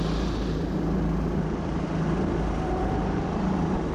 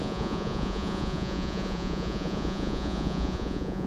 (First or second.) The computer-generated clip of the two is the second